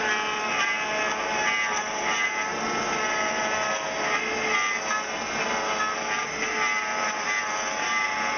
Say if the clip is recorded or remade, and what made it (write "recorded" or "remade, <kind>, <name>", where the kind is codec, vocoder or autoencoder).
recorded